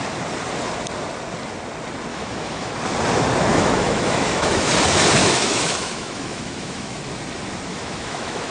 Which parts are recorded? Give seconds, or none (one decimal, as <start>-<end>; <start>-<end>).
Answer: 0.0-2.1; 2.7-3.5; 4.7-5.2; 7.0-7.7